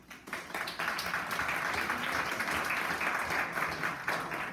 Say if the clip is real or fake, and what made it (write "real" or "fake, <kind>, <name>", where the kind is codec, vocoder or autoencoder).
real